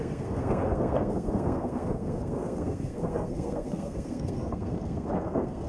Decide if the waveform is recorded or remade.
remade